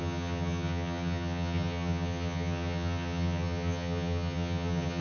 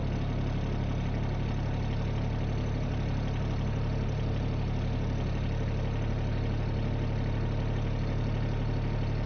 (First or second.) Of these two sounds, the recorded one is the second